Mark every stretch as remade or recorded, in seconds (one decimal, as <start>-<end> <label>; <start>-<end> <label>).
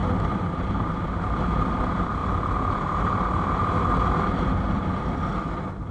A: 0.0-5.9 recorded